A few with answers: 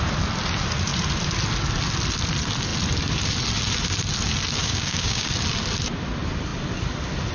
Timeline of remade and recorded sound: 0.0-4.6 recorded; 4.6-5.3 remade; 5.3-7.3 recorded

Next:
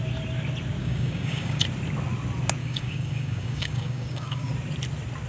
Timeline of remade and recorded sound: 0.0-0.8 recorded; 0.8-1.6 remade; 1.6-2.6 recorded; 2.6-4.5 remade; 4.5-5.3 recorded

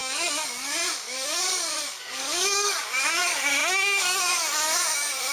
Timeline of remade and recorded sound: 0.0-5.3 remade

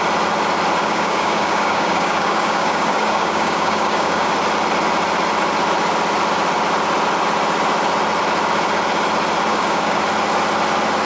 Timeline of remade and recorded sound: 0.0-0.8 recorded; 0.8-4.3 remade; 4.3-9.5 recorded; 9.5-10.0 remade; 10.0-11.1 recorded

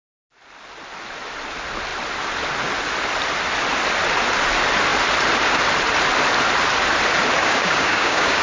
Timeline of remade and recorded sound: 0.0-7.4 recorded; 7.4-8.4 remade

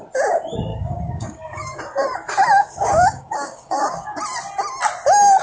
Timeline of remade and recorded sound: 0.0-0.7 recorded; 0.7-1.8 remade; 1.8-2.6 recorded; 2.6-4.2 remade; 4.2-5.4 recorded